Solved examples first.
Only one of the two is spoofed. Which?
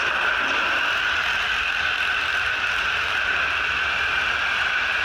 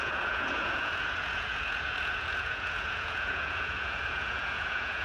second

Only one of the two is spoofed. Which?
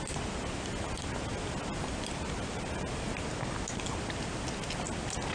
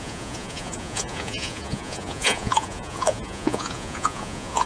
second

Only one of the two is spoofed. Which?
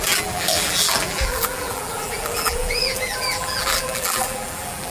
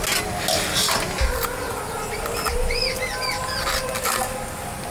first